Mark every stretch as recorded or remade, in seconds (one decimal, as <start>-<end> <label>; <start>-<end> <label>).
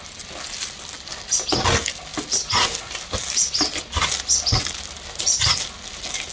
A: 0.0-6.3 recorded